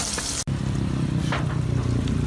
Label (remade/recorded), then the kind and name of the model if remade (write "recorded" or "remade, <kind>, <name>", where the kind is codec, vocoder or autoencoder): recorded